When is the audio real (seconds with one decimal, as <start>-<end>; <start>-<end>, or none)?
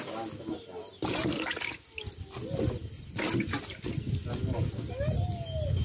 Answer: 0.0-5.8